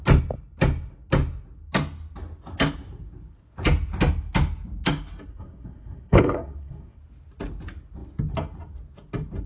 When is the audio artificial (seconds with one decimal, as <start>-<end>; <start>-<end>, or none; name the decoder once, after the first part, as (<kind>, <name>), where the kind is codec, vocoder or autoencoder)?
5.3-7.0 (codec, SNAC)

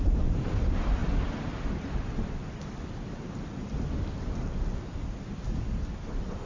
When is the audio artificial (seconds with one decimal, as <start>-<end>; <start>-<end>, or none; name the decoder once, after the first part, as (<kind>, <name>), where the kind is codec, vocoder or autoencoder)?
none

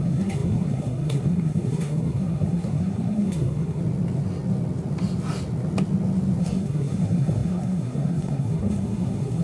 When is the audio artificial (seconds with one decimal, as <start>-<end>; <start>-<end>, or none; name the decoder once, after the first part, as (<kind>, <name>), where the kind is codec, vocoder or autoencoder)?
0.0-3.8 (codec, SNAC); 6.4-9.4

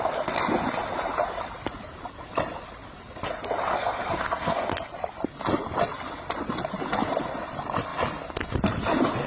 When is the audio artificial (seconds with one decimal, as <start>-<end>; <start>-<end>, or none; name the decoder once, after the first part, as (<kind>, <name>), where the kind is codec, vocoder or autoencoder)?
3.7-4.7 (codec, SNAC)